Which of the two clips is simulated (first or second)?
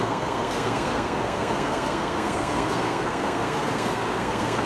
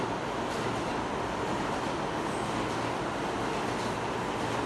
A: first